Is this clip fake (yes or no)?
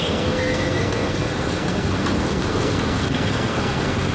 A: yes